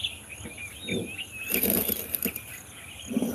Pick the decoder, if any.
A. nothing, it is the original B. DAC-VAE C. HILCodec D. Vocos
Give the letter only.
A